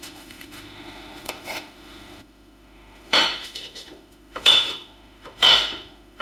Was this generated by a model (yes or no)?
yes